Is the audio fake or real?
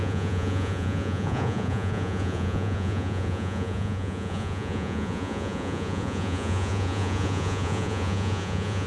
fake